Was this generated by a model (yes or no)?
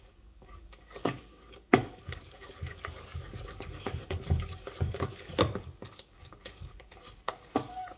yes